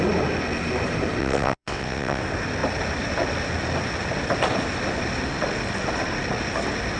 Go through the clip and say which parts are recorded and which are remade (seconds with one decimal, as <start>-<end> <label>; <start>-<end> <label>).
0.0-1.2 recorded; 1.2-2.2 remade; 2.2-7.0 recorded